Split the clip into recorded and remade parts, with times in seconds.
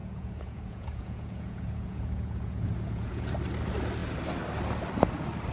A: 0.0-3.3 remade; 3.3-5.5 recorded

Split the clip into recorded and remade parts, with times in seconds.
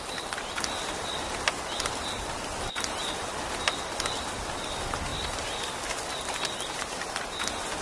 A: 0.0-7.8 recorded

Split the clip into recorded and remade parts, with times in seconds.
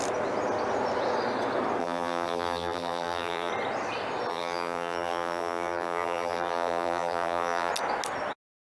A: 0.0-1.8 recorded; 1.8-3.5 remade; 3.5-4.3 recorded; 4.3-7.7 remade; 7.7-8.8 recorded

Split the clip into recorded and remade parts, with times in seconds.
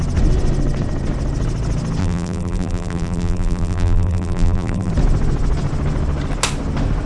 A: 0.0-2.0 recorded; 2.0-4.9 remade; 4.9-7.1 recorded